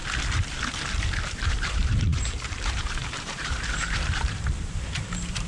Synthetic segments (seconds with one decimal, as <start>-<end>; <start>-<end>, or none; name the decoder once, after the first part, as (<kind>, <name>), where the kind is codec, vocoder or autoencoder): 1.4-5.5 (vocoder, BigVGAN v2)